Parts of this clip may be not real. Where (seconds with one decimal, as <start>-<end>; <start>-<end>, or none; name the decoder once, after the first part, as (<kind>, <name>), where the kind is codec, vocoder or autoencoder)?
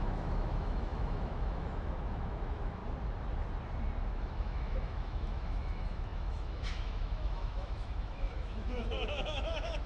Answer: 0.0-2.8 (autoencoder, DAC-VAE); 4.1-9.9